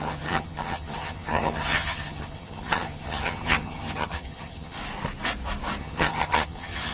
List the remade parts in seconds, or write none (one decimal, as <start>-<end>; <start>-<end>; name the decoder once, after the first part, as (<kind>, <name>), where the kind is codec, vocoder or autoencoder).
0.0-4.8 (vocoder, HiFi-GAN); 5.8-6.9